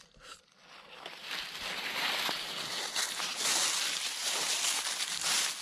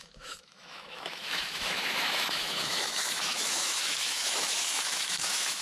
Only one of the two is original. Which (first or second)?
first